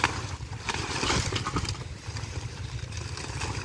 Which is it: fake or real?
real